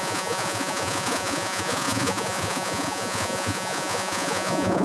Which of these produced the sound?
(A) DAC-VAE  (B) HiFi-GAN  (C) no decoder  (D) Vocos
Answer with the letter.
D